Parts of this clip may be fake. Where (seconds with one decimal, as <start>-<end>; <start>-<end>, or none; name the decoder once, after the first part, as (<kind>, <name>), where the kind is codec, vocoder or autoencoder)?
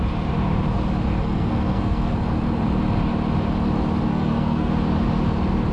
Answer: 1.2-2.1 (codec, SNAC); 4.1-4.7